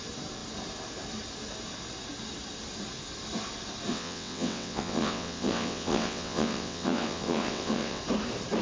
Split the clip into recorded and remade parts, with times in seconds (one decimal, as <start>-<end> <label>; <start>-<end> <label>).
0.0-3.9 recorded; 3.9-8.0 remade; 8.0-8.6 recorded